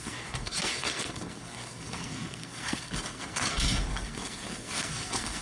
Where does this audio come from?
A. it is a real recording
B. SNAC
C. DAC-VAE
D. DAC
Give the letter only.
B